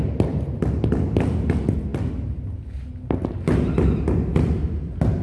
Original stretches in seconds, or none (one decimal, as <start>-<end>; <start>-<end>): 0.0-5.2